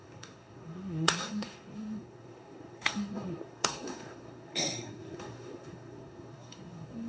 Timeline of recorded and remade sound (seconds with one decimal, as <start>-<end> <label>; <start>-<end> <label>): 0.0-7.1 remade